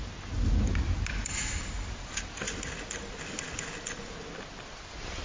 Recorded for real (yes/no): yes